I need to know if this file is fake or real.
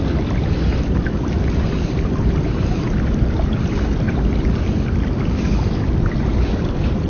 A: real